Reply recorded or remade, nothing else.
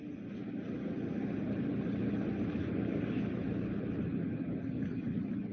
recorded